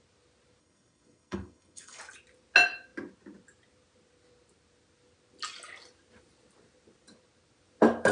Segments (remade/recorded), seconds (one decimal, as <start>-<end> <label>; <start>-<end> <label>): 0.0-0.6 recorded; 0.6-2.0 remade; 2.0-8.1 recorded